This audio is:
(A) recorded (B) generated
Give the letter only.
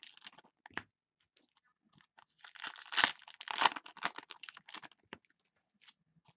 A